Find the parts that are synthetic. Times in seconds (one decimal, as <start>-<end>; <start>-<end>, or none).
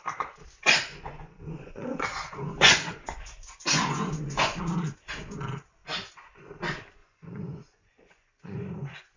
0.9-4.6; 7.0-9.2